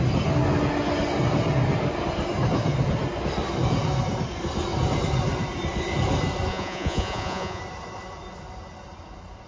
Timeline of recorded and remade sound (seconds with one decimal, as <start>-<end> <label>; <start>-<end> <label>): 0.0-6.5 recorded; 6.5-7.6 remade; 7.6-9.5 recorded